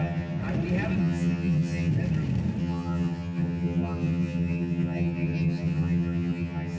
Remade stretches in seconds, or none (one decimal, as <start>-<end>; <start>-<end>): 0.0-0.4; 1.0-1.9; 2.6-6.8